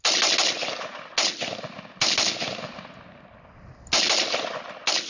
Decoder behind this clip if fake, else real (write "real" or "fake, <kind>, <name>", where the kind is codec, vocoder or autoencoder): real